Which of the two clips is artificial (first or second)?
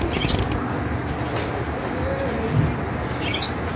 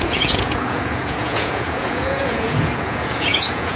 second